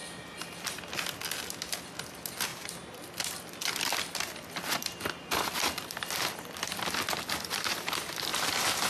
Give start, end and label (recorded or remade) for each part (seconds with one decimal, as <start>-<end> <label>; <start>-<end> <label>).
0.0-8.9 recorded

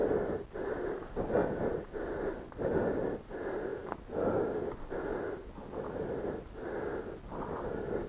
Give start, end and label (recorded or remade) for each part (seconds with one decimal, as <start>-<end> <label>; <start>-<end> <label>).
0.0-8.1 recorded